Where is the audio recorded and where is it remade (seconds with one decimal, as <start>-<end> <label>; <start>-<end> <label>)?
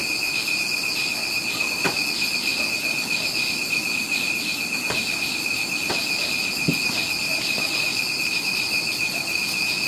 0.0-9.9 recorded